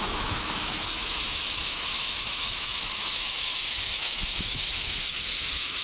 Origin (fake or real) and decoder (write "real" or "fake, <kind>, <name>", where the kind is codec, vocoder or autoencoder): fake, autoencoder, DAC-VAE